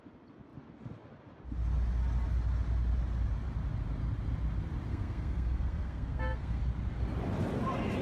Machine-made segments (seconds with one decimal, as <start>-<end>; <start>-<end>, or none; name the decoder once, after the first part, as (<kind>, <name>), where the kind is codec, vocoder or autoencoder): 4.9-6.6 (codec, SNAC)